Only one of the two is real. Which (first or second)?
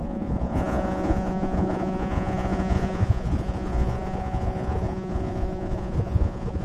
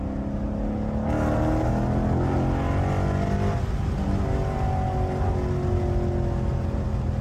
second